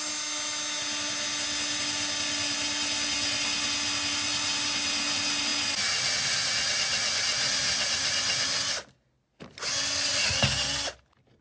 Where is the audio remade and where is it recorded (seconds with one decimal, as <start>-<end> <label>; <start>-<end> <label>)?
0.0-11.4 recorded